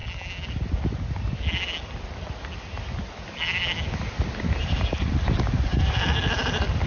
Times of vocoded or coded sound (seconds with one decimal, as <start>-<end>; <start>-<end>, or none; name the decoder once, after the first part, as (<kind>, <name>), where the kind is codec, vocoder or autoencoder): none